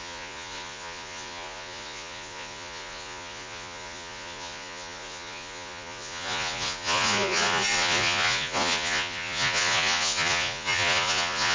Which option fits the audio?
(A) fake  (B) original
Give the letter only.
A